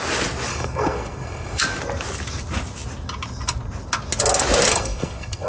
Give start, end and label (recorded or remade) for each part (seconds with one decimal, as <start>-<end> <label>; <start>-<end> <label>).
0.0-0.5 recorded; 0.5-1.6 remade; 1.6-4.7 recorded; 4.7-5.5 remade